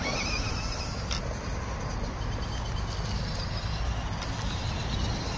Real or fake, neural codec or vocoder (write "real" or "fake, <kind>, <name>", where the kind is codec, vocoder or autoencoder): real